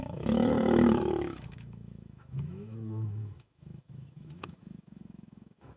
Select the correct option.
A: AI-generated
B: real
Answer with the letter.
A